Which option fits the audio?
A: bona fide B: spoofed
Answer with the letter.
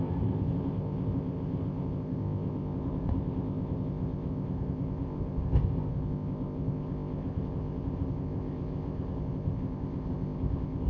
B